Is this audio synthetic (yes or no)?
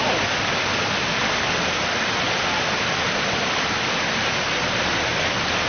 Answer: no